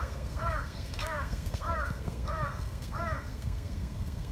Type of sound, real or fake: fake